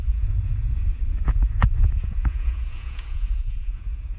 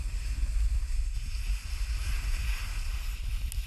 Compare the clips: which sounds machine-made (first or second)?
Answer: first